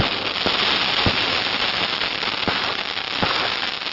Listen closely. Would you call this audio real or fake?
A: real